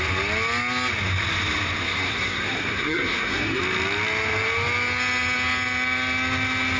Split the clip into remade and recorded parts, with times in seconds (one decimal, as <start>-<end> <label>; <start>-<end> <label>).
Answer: 0.0-1.8 recorded; 1.8-3.6 remade; 3.6-6.8 recorded

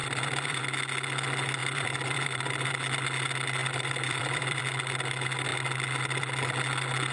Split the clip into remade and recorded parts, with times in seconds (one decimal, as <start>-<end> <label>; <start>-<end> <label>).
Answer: 0.0-0.6 remade; 0.6-1.6 recorded; 1.6-2.7 remade; 2.7-3.6 recorded; 3.6-4.6 remade; 4.6-7.1 recorded

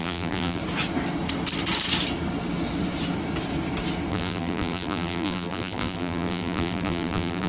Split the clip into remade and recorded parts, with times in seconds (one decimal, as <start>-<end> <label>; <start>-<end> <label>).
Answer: 0.0-0.6 remade; 0.6-4.1 recorded; 4.1-7.5 remade

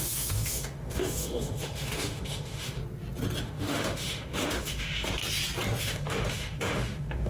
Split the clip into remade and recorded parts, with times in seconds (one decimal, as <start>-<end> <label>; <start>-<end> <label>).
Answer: 0.0-2.8 remade; 2.8-3.4 recorded; 3.4-5.2 remade; 5.2-5.8 recorded; 5.8-7.3 remade

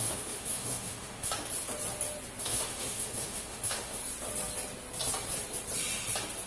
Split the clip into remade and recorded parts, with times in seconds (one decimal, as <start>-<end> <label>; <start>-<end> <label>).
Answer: 0.0-1.3 remade; 1.3-2.4 recorded; 2.4-4.0 remade; 4.0-6.5 recorded

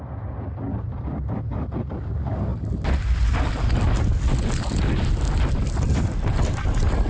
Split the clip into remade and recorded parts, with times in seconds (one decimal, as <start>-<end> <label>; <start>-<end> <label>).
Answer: 0.0-7.1 recorded